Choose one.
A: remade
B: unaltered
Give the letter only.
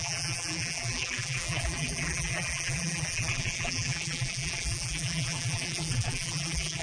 A